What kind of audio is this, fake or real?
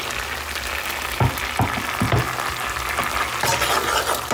real